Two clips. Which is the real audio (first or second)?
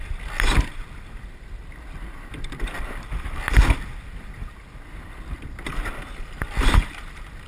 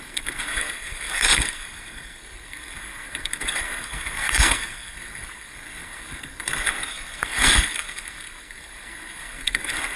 first